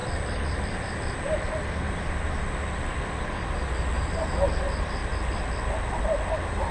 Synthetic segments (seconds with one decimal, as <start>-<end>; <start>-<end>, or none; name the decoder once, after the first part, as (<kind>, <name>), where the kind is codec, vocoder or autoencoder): 0.0-1.2 (vocoder, BigVGAN v2)